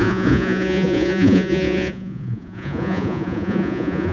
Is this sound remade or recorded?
remade